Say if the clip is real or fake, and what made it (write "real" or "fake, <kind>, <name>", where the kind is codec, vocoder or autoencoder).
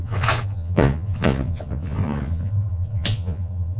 fake, vocoder, Vocos